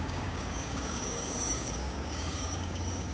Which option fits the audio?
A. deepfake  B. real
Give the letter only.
A